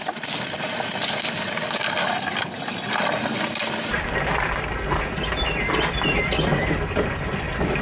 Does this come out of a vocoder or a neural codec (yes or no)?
no